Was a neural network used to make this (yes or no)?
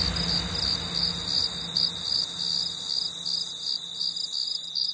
no